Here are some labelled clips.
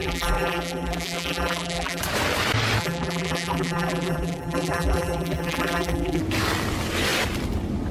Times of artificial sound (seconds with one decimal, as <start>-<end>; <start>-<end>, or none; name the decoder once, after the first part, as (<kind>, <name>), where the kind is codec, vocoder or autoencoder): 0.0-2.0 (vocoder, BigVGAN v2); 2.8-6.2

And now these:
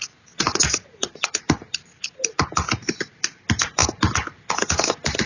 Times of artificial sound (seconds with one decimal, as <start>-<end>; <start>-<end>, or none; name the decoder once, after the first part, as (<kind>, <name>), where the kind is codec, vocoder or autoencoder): none

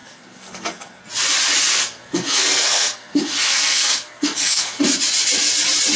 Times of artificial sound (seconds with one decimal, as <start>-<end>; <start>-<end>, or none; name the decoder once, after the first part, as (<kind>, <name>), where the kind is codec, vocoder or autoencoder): 0.0-1.0 (codec, SNAC); 1.7-4.8

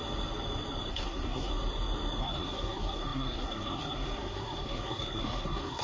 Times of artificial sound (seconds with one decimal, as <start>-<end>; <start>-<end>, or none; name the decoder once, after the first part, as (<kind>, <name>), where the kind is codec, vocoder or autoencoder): 0.9-1.5 (codec, SNAC); 2.2-5.8

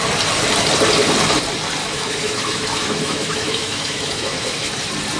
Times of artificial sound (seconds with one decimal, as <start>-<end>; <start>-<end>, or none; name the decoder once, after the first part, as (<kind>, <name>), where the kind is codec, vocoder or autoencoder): 1.8-4.7 (autoencoder, DAC-VAE)